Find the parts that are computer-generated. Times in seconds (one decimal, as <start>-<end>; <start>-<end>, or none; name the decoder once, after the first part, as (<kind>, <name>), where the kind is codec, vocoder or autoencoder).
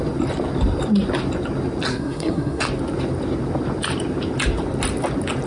1.9-2.6 (codec, SNAC)